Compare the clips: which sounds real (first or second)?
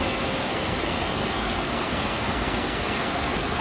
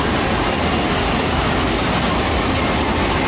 second